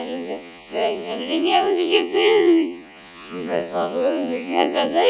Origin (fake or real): fake